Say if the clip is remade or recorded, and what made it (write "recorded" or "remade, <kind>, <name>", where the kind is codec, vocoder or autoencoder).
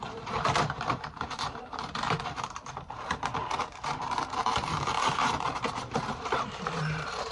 remade, vocoder, BigVGAN v2